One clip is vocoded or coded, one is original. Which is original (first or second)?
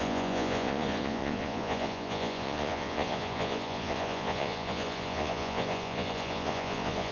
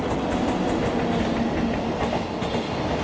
second